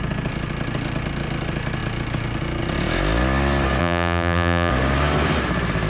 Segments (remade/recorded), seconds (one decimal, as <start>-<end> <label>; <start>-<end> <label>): 0.0-3.8 recorded; 3.8-4.7 remade; 4.7-5.9 recorded

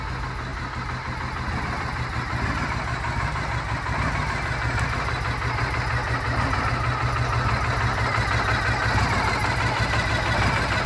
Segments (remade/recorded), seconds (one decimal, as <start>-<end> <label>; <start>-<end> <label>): 0.0-10.9 recorded

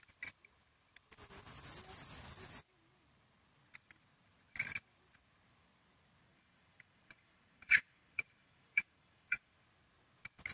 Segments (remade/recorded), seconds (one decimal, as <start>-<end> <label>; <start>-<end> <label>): 0.0-6.3 recorded; 6.3-9.5 remade; 9.5-10.5 recorded

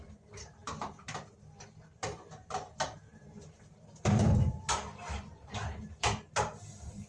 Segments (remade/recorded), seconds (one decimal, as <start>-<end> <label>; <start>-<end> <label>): 0.0-7.1 remade

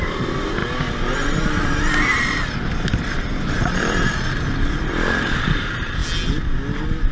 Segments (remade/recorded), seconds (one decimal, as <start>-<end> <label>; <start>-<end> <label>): 0.0-0.6 remade; 0.6-4.9 recorded; 4.9-6.0 remade; 6.0-7.1 recorded

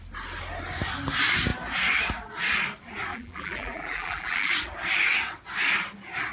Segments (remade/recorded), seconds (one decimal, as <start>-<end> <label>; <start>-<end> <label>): 0.0-3.1 recorded; 3.1-4.5 remade; 4.5-6.3 recorded

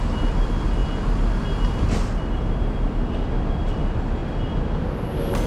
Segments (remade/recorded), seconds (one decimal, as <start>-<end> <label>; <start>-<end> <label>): 0.0-4.2 recorded; 4.2-4.8 remade; 4.8-5.5 recorded

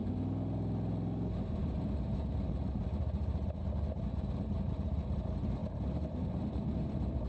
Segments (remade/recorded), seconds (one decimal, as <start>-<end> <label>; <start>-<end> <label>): 0.0-1.5 recorded; 1.5-7.3 remade